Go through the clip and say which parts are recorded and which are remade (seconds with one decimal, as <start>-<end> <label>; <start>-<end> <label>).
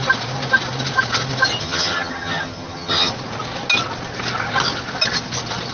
0.0-1.6 recorded; 1.6-3.1 remade; 3.1-5.7 recorded